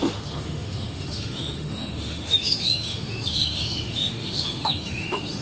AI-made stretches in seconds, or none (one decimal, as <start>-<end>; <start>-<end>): 0.0-5.4